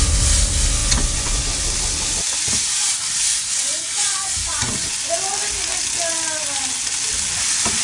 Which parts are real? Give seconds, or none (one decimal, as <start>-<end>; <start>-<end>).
0.0-0.8; 1.4-3.3; 5.1-7.8